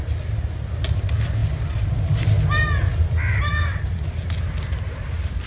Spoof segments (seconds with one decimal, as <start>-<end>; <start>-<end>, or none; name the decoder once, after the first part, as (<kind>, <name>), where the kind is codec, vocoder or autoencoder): none